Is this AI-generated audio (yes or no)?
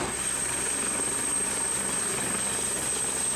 no